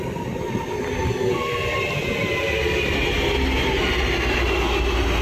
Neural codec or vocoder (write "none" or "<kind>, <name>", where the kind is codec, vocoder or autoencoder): none